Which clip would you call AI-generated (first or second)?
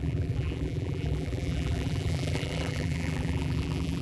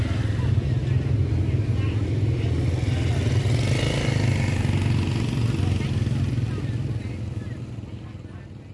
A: first